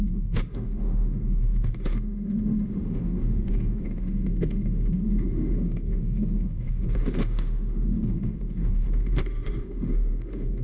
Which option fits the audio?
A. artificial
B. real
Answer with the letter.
A